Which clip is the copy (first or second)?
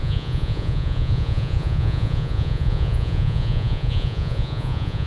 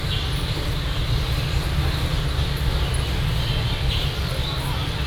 first